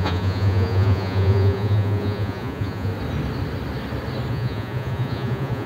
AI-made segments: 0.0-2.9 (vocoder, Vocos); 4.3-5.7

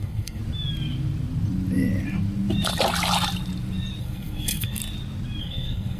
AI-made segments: 0.0-0.4 (codec, SNAC); 4.0-4.8; 5.4-6.0

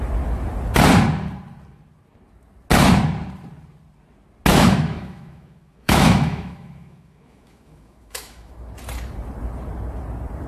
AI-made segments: 4.5-8.5 (autoencoder, DAC-VAE)

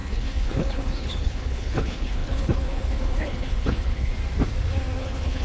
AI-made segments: 0.0-4.1 (codec, HILCodec); 5.0-5.4

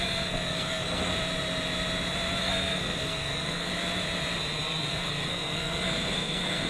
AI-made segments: 0.0-1.1 (codec, SNAC); 2.4-3.7; 4.9-6.7

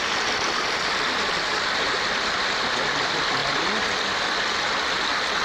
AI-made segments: none

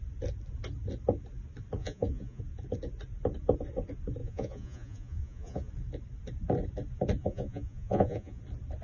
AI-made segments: 1.8-2.4 (vocoder, Vocos); 4.2-5.7; 7.2-8.4

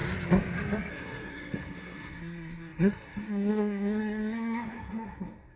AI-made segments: 0.9-5.6 (codec, SNAC)